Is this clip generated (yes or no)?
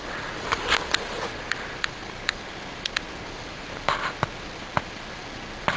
no